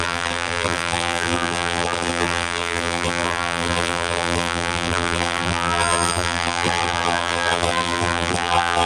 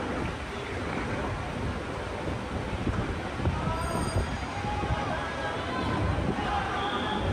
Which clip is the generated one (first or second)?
first